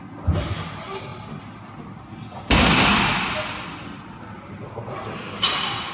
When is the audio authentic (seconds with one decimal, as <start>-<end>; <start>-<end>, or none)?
0.0-5.9